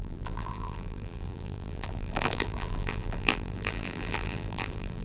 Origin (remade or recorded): remade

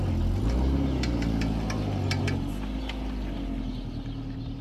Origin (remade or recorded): recorded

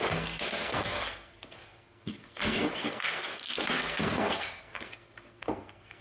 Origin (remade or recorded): remade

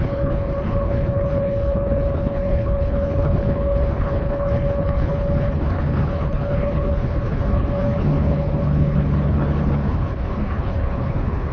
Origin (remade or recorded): remade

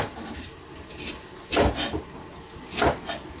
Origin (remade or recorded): recorded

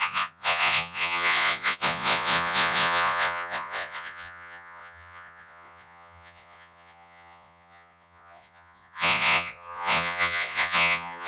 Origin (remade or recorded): remade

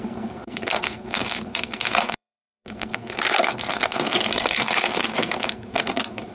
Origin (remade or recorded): remade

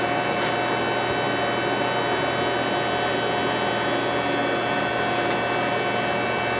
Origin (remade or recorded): recorded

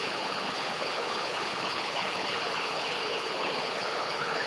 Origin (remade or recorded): remade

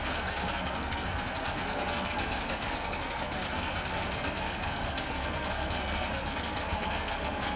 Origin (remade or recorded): remade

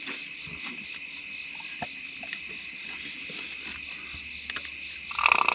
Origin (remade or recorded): recorded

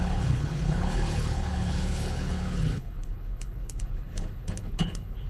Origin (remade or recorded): remade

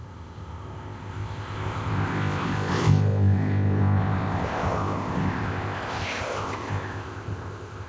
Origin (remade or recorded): remade